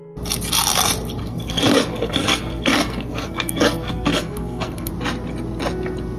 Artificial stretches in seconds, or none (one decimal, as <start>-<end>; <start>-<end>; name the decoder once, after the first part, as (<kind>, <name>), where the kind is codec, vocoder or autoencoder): 1.2-4.9 (codec, SNAC)